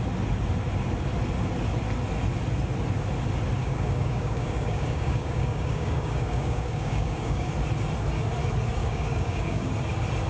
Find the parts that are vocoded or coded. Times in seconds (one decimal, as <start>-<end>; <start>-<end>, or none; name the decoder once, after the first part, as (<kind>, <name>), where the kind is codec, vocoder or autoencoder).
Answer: 3.6-7.5 (codec, DAC); 8.8-9.7